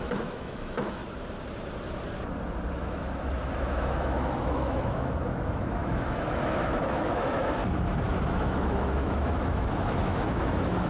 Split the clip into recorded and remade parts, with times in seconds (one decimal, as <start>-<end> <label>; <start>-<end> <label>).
0.0-1.0 remade; 1.0-2.7 recorded; 2.7-7.6 remade; 7.6-8.3 recorded; 8.3-10.9 remade